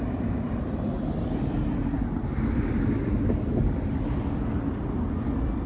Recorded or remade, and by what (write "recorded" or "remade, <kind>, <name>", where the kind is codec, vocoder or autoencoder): recorded